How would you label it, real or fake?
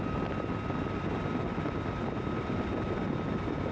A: real